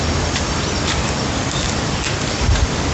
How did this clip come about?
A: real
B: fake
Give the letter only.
A